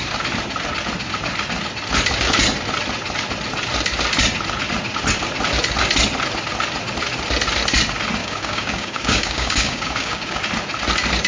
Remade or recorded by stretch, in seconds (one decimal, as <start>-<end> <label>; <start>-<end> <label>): 0.0-8.2 recorded; 8.2-10.4 remade; 10.4-11.3 recorded